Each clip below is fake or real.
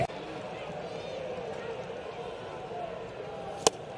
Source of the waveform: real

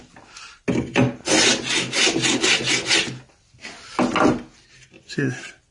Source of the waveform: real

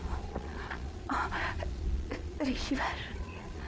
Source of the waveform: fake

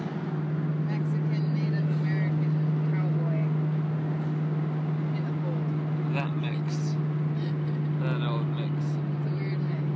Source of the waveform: real